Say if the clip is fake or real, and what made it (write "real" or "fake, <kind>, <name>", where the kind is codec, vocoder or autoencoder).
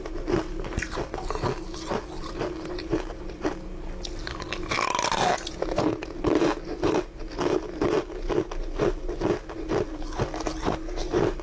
real